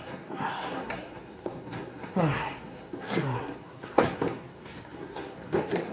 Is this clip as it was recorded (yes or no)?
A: no